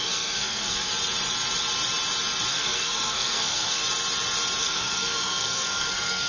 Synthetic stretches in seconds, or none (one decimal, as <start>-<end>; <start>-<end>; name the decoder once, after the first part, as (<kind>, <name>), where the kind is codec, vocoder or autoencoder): 0.0-0.9 (codec, SNAC); 2.5-3.8; 4.6-6.3